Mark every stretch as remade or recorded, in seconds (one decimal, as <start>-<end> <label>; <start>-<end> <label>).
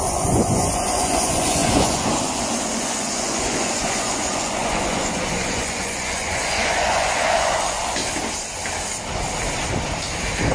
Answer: 0.0-8.0 remade; 8.0-10.5 recorded